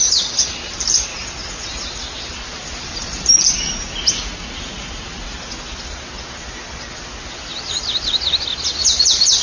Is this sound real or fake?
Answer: real